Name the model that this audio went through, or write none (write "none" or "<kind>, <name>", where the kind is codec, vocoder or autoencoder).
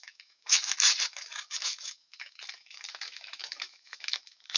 autoencoder, DAC-VAE